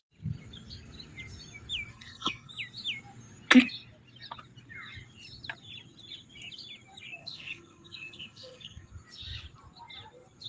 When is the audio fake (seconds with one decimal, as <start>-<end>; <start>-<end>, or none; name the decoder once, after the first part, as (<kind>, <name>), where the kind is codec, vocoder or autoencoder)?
1.9-2.5 (codec, SNAC); 7.2-8.9